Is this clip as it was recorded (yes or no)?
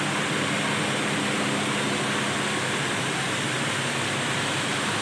yes